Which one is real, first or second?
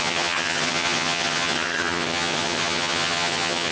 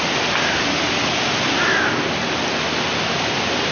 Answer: second